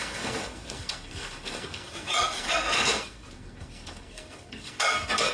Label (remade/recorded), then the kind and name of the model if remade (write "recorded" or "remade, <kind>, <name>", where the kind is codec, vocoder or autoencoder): remade, codec, SNAC